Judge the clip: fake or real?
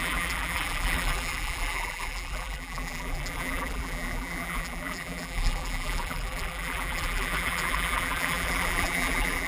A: fake